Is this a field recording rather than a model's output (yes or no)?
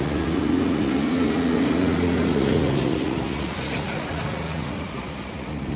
no